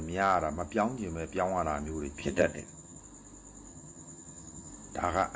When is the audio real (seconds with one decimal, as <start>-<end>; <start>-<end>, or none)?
0.0-2.2; 3.0-3.7; 4.7-5.4